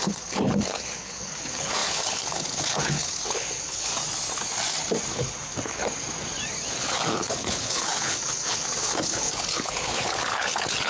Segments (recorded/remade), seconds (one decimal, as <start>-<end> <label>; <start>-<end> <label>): 0.0-3.9 remade; 3.9-5.1 recorded; 5.1-5.8 remade; 5.8-6.8 recorded; 6.8-10.9 remade